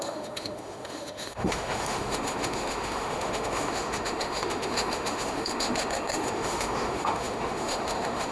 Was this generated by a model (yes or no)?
yes